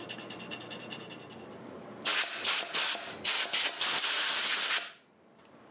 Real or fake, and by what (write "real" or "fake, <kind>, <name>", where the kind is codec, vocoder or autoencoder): real